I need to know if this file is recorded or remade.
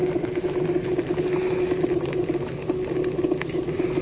recorded